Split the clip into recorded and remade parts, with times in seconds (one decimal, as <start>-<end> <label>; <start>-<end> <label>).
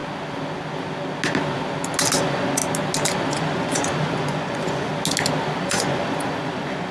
0.0-2.2 recorded; 2.2-2.6 remade; 2.6-3.3 recorded; 3.3-4.9 remade; 4.9-5.6 recorded; 5.6-6.9 remade